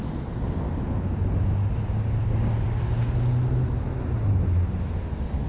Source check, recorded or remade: recorded